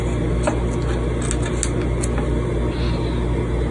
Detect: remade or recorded recorded